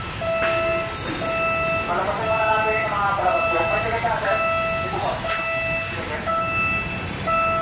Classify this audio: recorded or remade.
recorded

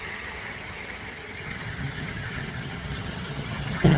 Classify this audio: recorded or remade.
remade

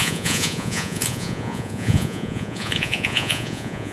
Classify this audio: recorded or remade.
remade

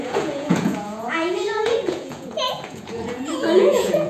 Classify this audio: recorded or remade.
remade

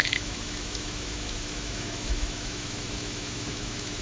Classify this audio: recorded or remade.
remade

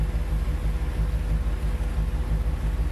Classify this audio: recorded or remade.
recorded